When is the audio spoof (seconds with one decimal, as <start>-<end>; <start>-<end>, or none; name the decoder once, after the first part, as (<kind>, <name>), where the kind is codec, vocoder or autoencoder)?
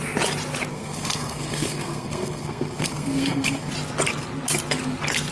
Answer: 0.7-3.7 (codec, SNAC)